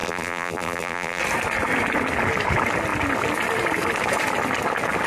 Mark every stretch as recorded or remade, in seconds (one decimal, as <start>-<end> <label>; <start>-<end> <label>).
0.0-1.2 remade; 1.2-5.1 recorded